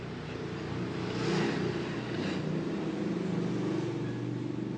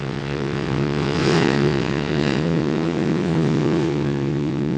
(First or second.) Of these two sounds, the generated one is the second